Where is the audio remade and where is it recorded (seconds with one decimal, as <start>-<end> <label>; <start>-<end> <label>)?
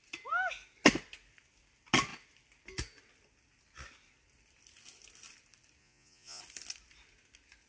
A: 0.0-5.8 recorded; 5.8-6.4 remade; 6.4-7.7 recorded